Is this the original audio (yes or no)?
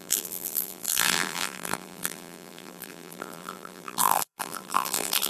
no